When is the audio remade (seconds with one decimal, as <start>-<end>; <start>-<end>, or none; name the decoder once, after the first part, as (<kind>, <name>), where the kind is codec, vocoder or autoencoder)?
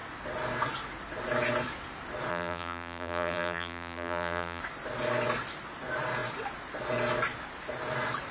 2.3-4.6 (vocoder, BigVGAN v2)